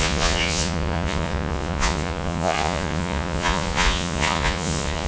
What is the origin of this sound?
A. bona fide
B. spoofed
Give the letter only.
B